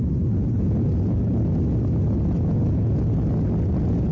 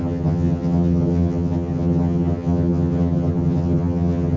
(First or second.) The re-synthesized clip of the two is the second